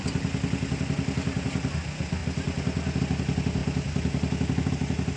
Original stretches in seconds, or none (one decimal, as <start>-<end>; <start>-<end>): 0.0-5.2